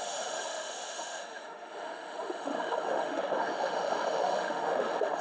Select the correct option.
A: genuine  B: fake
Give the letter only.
B